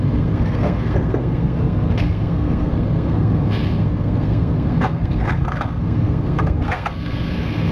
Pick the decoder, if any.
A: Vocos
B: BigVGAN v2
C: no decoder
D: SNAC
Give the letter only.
D